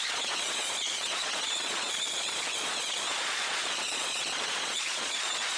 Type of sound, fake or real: fake